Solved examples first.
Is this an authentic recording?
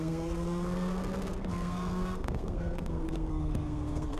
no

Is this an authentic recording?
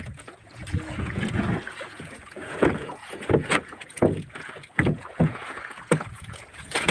no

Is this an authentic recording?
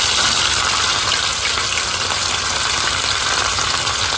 yes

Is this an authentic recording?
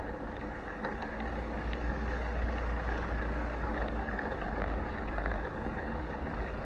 no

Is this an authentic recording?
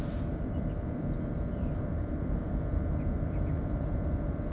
no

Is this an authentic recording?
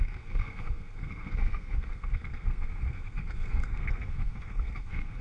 no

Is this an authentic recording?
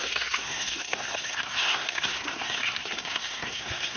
no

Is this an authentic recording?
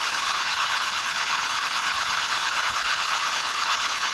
no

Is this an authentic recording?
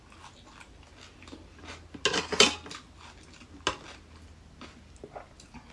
yes